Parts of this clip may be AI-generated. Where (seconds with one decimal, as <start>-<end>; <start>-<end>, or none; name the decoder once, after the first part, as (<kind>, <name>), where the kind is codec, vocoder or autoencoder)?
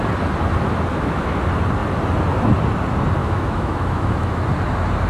0.9-1.4 (autoencoder, DAC-VAE); 3.2-4.3